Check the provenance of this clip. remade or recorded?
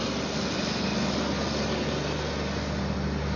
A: recorded